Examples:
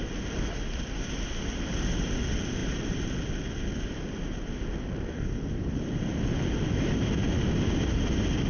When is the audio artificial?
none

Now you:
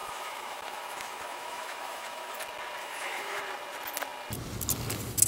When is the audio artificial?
0.0-2.4 (autoencoder, DAC-VAE); 2.8-3.4

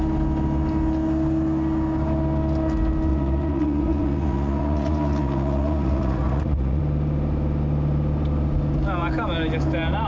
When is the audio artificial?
3.1-6.8 (vocoder, Vocos)

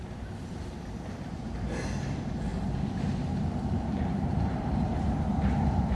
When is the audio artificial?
0.0-2.5 (vocoder, BigVGAN v2); 3.7-5.9

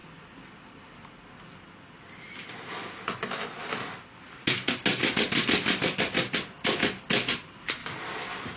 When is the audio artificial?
none

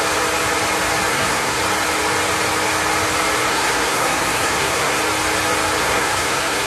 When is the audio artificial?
1.1-1.6 (codec, SNAC); 3.5-5.0; 5.8-6.7